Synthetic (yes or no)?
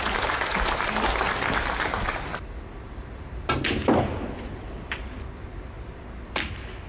no